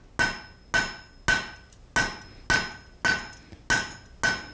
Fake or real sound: real